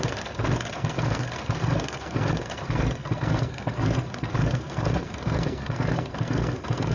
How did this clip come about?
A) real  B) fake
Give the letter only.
B